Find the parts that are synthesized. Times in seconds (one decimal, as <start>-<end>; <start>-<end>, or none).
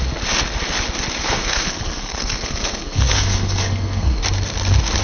1.2-4.2